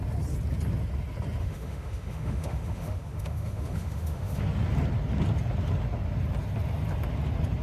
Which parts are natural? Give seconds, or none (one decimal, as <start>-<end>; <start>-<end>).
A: 0.0-1.4; 4.4-7.6